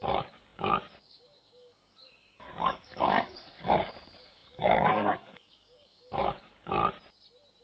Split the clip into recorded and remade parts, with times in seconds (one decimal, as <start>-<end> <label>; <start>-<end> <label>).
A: 0.0-6.8 remade; 6.8-7.6 recorded